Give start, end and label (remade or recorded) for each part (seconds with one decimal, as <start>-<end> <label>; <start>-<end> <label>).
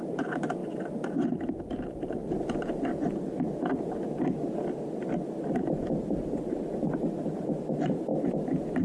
0.0-0.6 remade; 0.6-1.5 recorded; 1.5-2.2 remade; 2.2-5.5 recorded; 5.5-8.1 remade; 8.1-8.8 recorded